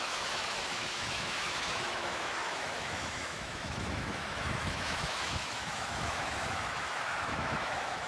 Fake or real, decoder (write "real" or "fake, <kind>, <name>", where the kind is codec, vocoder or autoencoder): fake, autoencoder, DAC-VAE